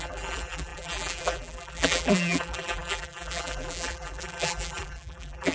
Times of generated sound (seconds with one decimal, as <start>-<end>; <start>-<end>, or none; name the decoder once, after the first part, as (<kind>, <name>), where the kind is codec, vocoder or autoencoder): 0.0-5.5 (vocoder, BigVGAN v2)